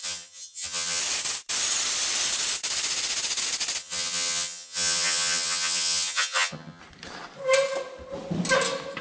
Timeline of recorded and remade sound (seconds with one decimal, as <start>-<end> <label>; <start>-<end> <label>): 0.0-1.0 remade; 1.0-3.8 recorded; 3.8-6.8 remade; 6.8-9.0 recorded